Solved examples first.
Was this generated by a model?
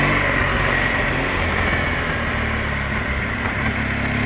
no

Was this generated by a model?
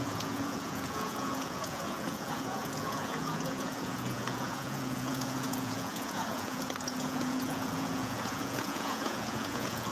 yes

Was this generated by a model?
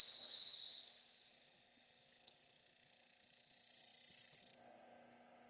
no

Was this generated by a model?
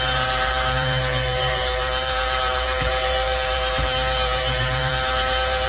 yes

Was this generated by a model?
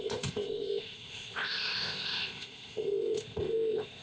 yes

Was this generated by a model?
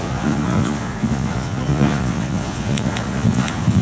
yes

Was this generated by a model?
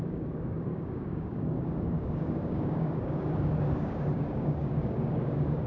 yes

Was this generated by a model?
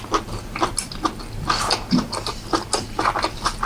no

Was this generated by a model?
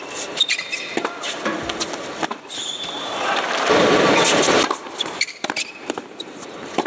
yes